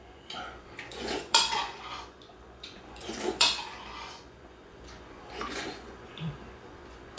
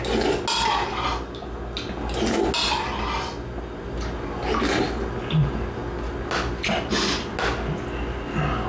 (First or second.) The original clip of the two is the second